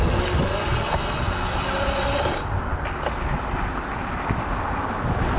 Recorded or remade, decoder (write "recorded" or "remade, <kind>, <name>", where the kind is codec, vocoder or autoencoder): recorded